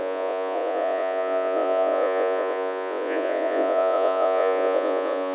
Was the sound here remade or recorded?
remade